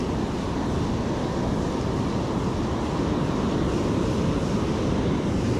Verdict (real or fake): real